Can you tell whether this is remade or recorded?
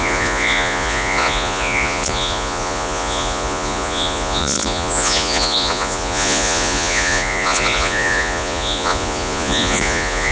remade